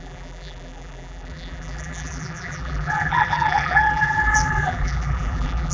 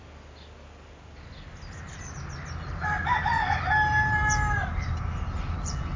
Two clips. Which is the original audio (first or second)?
second